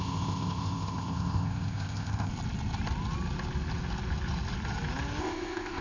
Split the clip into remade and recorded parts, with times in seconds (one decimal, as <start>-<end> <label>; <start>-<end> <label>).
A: 0.0-2.3 remade; 2.3-5.2 recorded; 5.2-5.8 remade

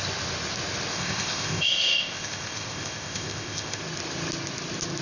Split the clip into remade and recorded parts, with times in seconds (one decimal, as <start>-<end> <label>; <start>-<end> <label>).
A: 0.0-0.9 recorded; 0.9-3.8 remade; 3.8-5.0 recorded

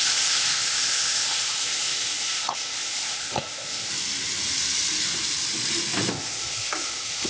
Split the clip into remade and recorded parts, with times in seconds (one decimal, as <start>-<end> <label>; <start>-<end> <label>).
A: 0.0-3.9 remade; 3.9-6.1 recorded; 6.1-7.3 remade

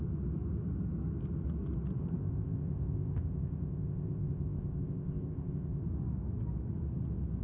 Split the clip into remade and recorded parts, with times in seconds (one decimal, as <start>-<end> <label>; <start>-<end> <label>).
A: 0.0-2.0 recorded; 2.0-5.8 remade; 5.8-7.4 recorded